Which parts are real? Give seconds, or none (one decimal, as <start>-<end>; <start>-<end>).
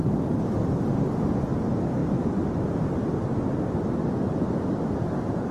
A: 0.9-5.5